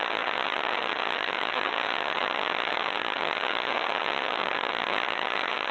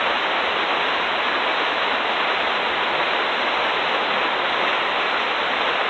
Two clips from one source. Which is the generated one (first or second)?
first